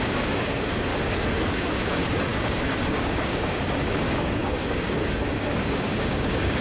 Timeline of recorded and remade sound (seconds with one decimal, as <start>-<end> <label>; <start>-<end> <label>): 0.0-0.9 remade; 0.9-1.5 recorded; 1.5-6.6 remade